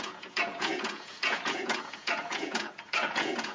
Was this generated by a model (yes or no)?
yes